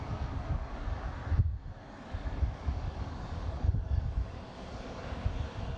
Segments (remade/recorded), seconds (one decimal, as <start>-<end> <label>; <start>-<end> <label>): 0.0-1.2 remade; 1.2-1.8 recorded; 1.8-5.8 remade